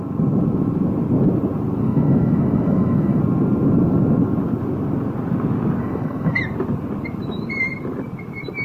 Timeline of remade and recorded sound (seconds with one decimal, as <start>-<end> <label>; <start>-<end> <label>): 0.0-1.8 recorded; 1.8-3.2 remade; 3.2-5.8 recorded; 5.8-6.4 remade; 6.4-8.6 recorded